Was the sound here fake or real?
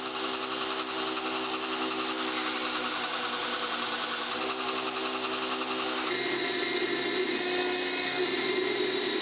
real